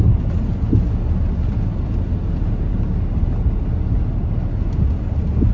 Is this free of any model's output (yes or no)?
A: yes